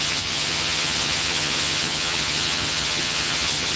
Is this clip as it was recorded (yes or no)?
no